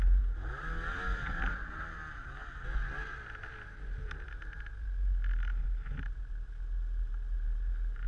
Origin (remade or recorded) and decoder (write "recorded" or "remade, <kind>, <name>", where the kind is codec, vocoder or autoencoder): recorded